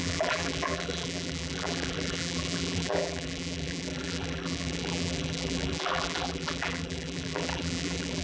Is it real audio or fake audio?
fake